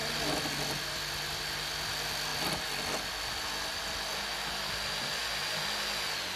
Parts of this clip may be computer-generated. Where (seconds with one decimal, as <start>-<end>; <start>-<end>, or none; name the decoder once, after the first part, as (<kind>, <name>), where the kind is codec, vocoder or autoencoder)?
none